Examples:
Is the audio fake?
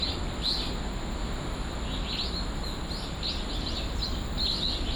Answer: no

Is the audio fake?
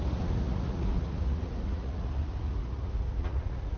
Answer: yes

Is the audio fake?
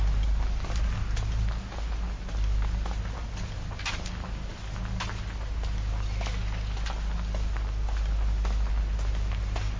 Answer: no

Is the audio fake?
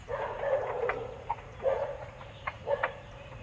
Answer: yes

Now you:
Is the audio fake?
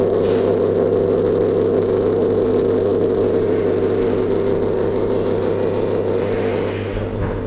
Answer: no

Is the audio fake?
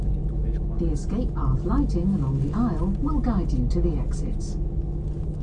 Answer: no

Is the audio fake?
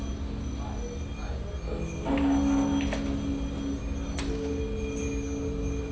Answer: no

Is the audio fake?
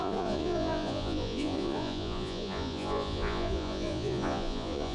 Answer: yes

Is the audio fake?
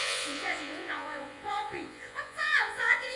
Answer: yes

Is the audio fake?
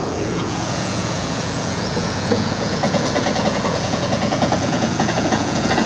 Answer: yes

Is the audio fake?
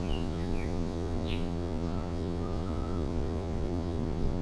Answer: yes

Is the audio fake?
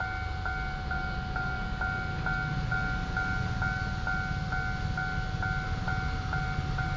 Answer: no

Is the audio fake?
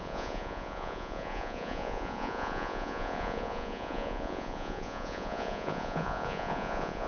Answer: yes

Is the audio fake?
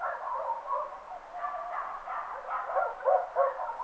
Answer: no